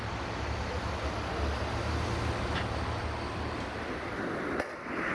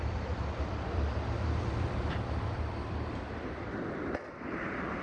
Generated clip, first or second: second